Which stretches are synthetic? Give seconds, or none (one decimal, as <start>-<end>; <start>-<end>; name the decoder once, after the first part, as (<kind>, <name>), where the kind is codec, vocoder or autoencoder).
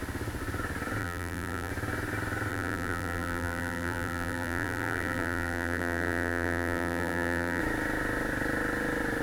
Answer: 1.0-1.7 (vocoder, BigVGAN v2); 2.5-7.6